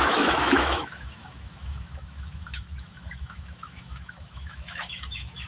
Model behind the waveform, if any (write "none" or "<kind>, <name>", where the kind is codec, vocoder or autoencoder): autoencoder, DAC-VAE